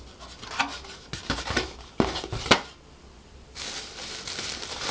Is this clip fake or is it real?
real